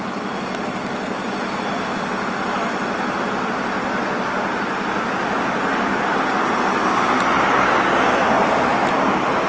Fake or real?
real